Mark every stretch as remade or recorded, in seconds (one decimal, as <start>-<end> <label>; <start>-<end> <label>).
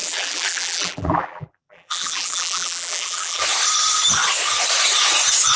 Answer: 0.0-3.4 remade; 3.4-5.6 recorded